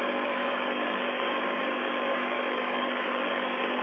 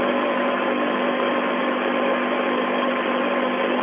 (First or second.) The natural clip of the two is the second